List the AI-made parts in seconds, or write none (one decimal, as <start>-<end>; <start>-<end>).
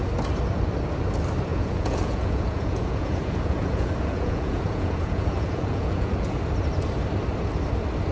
1.5-6.4